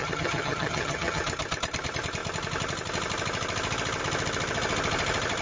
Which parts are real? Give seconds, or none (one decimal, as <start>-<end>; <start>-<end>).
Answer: 1.2-5.4